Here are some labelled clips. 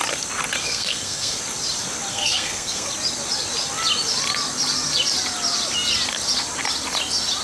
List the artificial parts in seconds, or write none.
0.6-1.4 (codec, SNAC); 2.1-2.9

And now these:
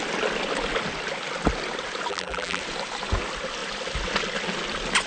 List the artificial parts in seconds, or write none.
2.1-2.6 (vocoder, BigVGAN v2)

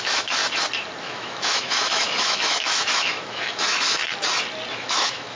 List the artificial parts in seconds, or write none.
0.0-0.4 (autoencoder, DAC-VAE); 1.0-4.0; 4.7-5.4

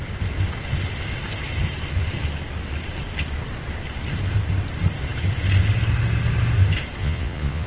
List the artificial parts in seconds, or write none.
7.0-7.7 (vocoder, Vocos)

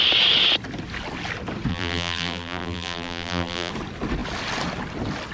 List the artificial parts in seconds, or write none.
1.7-3.7 (vocoder, BigVGAN v2)